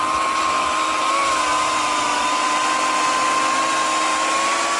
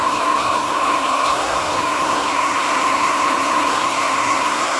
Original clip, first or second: first